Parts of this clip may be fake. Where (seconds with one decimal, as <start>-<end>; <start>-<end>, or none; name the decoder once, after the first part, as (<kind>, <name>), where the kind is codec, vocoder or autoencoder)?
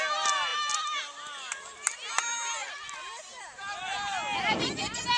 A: none